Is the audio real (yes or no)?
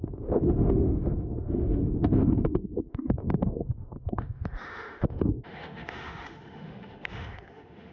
no